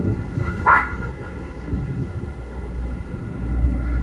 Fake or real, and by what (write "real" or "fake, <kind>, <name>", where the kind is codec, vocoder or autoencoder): fake, codec, SNAC